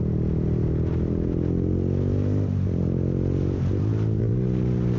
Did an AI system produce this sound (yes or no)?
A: no